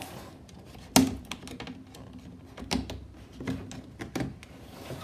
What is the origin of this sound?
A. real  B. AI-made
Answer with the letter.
A